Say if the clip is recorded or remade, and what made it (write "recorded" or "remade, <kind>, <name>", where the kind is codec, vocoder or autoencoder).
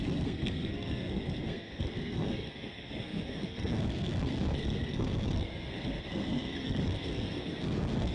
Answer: remade, codec, SNAC